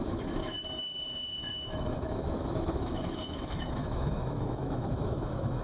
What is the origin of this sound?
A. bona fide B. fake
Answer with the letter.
B